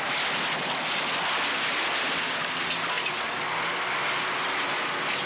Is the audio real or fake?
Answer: real